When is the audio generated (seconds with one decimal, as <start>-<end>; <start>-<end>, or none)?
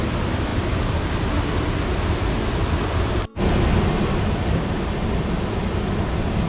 none